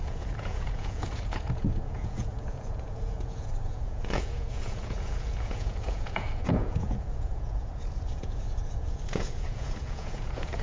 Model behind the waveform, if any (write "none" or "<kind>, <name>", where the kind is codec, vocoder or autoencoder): vocoder, Vocos